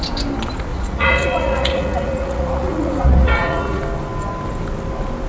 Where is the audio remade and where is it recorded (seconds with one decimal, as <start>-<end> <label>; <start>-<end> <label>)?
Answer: 0.0-0.7 recorded; 0.7-3.8 remade; 3.8-5.3 recorded